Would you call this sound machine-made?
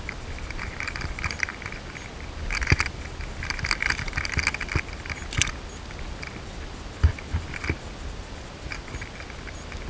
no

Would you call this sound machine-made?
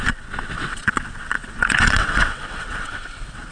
yes